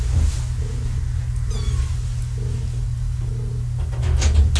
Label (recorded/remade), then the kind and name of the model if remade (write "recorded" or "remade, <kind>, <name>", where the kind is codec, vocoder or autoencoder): recorded